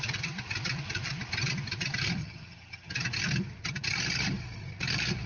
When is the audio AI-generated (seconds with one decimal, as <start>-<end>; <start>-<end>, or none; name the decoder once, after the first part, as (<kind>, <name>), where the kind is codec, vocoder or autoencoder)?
2.2-2.9 (vocoder, HiFi-GAN)